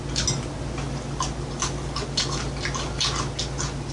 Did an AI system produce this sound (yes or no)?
no